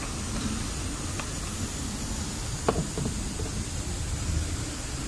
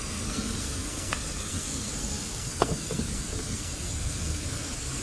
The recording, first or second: first